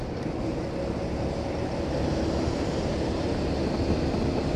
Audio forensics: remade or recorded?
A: recorded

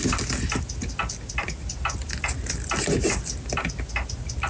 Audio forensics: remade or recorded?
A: recorded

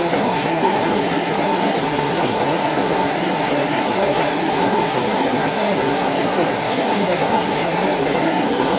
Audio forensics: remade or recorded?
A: remade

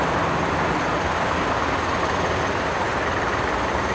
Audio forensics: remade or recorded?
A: recorded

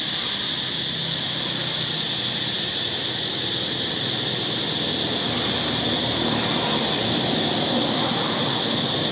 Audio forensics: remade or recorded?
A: recorded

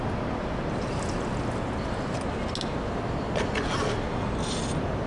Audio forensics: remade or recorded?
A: recorded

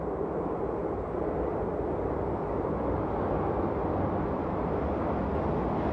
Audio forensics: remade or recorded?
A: recorded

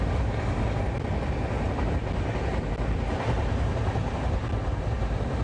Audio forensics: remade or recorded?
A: recorded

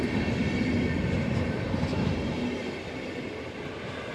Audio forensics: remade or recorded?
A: recorded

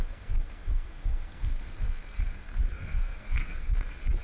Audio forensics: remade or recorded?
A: remade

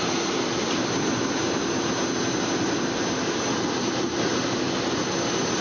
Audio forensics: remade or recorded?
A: recorded